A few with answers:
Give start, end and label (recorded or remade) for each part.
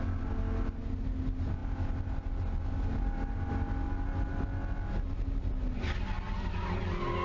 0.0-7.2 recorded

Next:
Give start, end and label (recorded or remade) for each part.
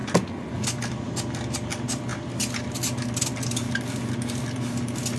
0.0-5.2 recorded